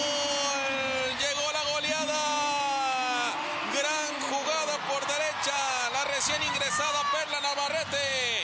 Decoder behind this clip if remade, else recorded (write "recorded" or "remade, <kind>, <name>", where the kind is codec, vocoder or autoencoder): recorded